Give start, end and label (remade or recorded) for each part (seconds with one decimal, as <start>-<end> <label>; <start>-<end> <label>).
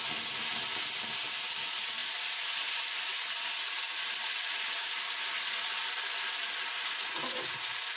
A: 0.0-8.0 recorded